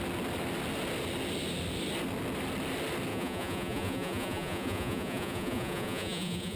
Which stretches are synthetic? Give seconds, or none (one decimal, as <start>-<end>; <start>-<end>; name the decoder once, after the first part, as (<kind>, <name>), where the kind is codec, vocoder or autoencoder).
3.1-6.6 (vocoder, Vocos)